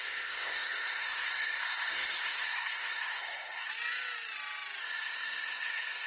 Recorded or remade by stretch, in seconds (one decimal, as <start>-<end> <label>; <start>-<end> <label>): 0.0-3.7 remade; 3.7-4.8 recorded; 4.8-6.1 remade